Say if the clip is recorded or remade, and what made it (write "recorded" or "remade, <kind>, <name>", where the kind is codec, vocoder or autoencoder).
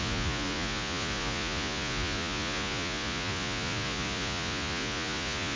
remade, vocoder, Vocos